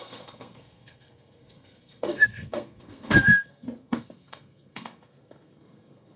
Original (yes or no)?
no